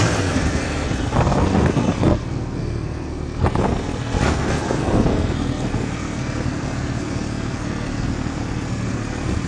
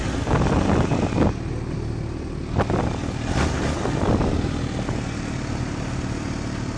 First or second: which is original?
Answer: second